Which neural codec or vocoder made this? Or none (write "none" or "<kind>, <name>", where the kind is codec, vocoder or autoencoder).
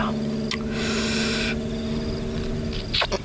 none